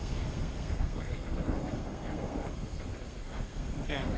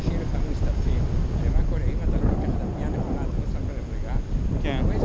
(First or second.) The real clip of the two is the second